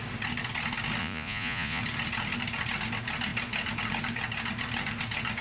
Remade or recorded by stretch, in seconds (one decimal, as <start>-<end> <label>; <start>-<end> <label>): 0.0-1.0 recorded; 1.0-1.8 remade; 1.8-5.4 recorded